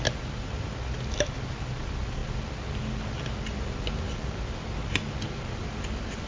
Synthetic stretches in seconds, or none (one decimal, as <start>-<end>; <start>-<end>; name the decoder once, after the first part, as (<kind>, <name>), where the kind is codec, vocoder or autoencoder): none